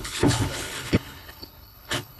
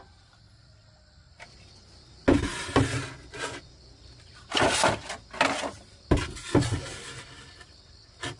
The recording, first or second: second